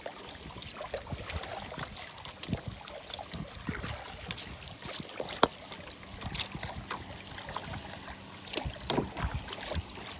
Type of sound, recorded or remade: recorded